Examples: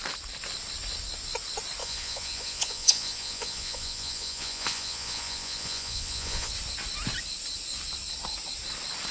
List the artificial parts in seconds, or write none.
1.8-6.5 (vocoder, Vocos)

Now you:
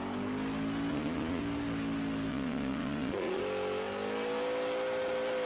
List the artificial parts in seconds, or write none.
0.9-1.4 (vocoder, Vocos); 2.3-3.4

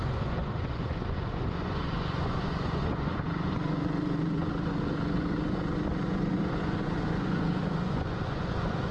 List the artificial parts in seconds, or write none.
0.0-8.9 (vocoder, Vocos)

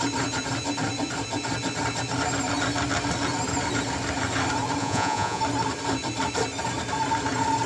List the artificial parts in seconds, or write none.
4.8-5.4 (vocoder, Vocos)

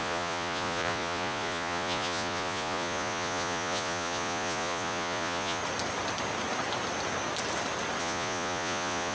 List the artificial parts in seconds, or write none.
0.0-5.6 (vocoder, Vocos); 8.0-9.1